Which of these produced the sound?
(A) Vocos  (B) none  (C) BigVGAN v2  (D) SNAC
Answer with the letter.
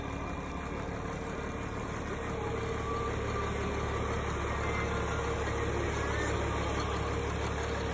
B